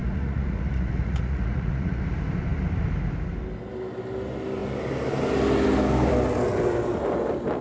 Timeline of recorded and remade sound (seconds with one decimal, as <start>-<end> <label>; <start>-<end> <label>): 0.0-2.0 remade; 2.0-7.6 recorded